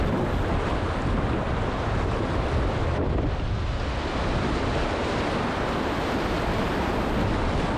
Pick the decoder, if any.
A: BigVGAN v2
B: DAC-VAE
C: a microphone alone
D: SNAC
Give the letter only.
A